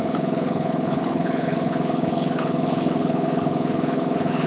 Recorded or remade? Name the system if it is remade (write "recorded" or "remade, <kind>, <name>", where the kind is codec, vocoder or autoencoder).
remade, codec, HILCodec